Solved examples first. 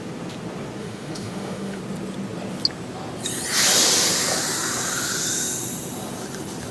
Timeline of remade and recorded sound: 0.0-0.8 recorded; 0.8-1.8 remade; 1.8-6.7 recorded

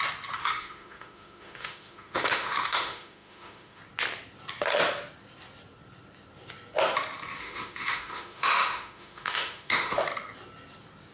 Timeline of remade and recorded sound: 0.0-0.4 recorded; 0.4-3.8 remade; 3.8-7.4 recorded; 7.4-10.0 remade; 10.0-11.1 recorded

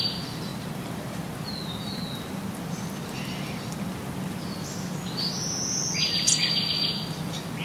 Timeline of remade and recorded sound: 0.0-7.6 recorded

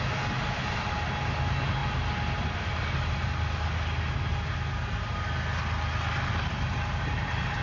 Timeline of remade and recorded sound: 0.0-7.6 recorded

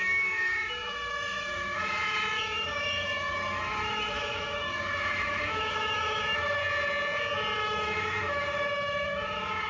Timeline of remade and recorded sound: 0.0-6.6 remade; 6.6-7.6 recorded; 7.6-9.7 remade

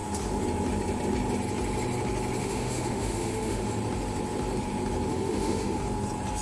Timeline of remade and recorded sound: 0.0-2.4 recorded; 2.4-3.6 remade; 3.6-5.1 recorded; 5.1-5.8 remade; 5.8-6.4 recorded

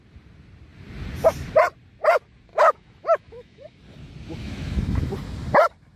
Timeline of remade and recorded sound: 0.0-2.5 recorded; 2.5-3.8 remade; 3.8-4.4 recorded; 4.4-5.1 remade; 5.1-6.0 recorded